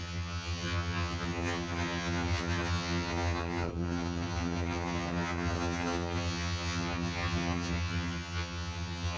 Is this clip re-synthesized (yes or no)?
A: yes